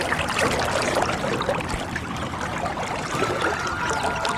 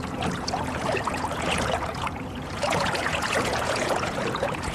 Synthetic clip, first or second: second